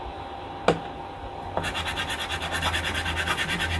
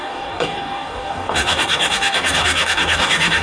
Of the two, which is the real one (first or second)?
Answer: first